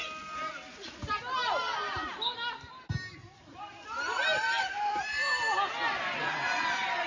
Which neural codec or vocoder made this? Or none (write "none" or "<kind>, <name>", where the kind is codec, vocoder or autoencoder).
none